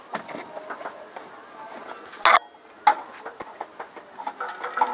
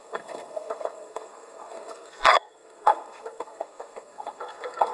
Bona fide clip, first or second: first